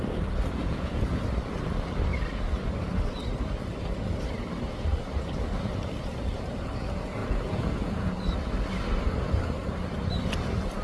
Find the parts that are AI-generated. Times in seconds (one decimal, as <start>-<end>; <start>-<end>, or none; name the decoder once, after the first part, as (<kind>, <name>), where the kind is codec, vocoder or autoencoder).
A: 0.6-1.2 (vocoder, Vocos); 7.2-8.1